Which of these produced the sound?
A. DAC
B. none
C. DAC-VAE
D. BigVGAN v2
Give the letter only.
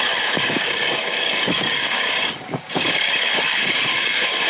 A